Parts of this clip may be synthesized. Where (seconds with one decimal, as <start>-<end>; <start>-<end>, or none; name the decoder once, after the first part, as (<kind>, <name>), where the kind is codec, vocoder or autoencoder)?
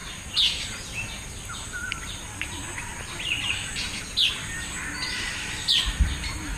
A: none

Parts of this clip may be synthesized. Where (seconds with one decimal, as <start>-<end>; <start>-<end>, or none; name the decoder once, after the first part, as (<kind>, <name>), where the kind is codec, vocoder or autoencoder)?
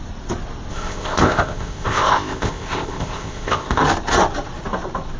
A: 0.7-3.8 (codec, ZipCodec)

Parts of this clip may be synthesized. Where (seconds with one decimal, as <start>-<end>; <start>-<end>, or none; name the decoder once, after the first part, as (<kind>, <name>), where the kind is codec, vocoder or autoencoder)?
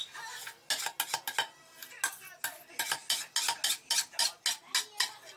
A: none